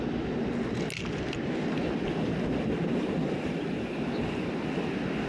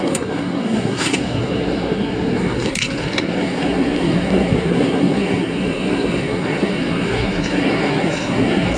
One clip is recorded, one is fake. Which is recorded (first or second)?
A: first